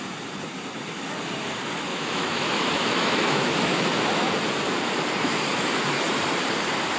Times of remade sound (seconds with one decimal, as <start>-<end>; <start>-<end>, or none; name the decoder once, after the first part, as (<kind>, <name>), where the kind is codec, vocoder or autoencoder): 1.9-4.3 (autoencoder, DAC-VAE); 5.3-5.8